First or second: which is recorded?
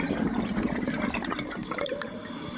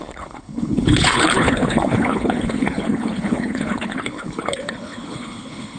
first